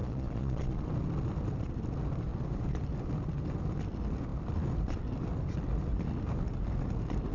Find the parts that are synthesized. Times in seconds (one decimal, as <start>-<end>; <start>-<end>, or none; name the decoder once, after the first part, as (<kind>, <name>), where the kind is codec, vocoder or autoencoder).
0.0-0.9 (vocoder, Vocos)